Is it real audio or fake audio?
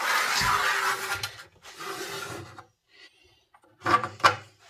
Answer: real